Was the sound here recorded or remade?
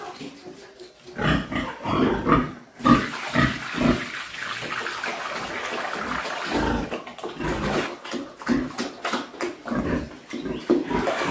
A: recorded